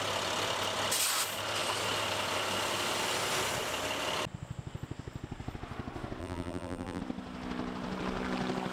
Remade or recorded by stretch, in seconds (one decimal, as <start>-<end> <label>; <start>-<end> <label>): 0.0-6.2 recorded; 6.2-7.0 remade; 7.0-8.7 recorded